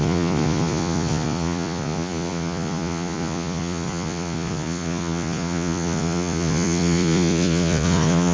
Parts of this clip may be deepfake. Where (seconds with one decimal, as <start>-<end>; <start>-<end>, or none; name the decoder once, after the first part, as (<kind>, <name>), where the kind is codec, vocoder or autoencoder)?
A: 0.0-8.3 (vocoder, Vocos)